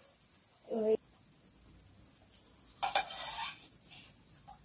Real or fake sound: real